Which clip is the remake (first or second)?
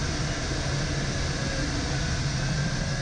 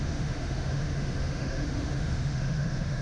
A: second